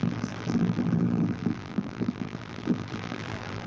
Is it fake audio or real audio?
fake